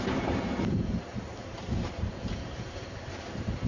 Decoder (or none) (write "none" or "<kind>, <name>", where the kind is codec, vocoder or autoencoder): vocoder, BigVGAN v2